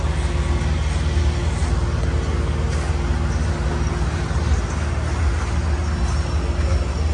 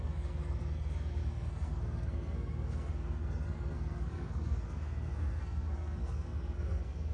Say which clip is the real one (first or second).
first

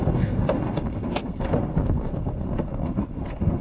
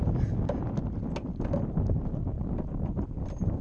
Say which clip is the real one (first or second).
second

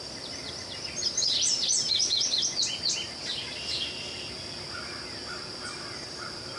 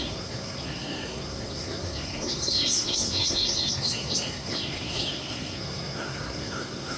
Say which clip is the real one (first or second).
first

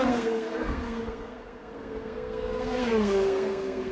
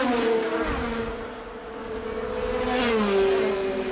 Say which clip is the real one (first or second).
second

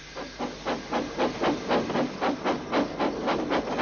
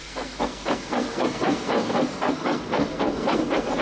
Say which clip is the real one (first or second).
first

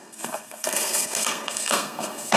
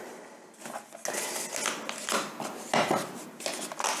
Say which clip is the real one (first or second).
second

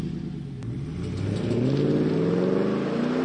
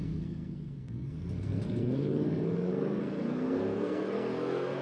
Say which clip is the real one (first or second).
first